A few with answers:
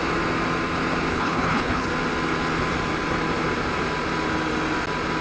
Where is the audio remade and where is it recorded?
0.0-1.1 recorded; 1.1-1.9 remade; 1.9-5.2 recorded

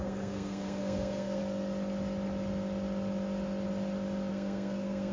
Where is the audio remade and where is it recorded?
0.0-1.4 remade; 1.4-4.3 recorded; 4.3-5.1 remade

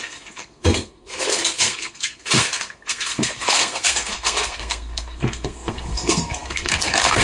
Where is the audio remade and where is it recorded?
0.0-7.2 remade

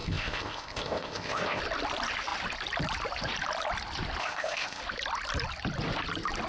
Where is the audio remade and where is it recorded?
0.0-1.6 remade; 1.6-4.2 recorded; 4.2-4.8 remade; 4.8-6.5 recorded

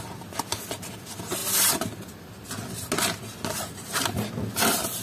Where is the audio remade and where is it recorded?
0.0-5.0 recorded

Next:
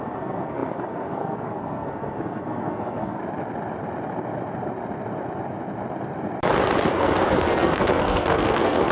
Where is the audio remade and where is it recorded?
0.0-3.2 remade; 3.2-6.8 recorded; 6.8-8.9 remade